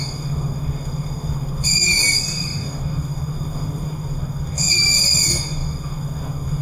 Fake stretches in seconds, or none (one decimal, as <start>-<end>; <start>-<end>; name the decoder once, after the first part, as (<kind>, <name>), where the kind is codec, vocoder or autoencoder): 0.0-6.6 (codec, DAC)